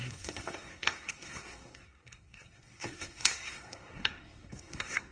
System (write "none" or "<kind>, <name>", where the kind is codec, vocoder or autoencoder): codec, SNAC